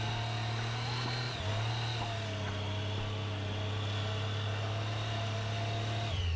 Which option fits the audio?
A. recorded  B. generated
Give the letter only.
A